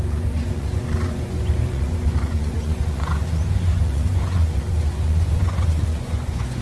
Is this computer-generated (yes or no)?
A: yes